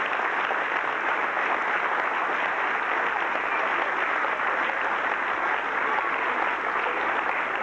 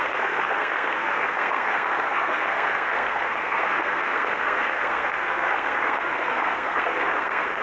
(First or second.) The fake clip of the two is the second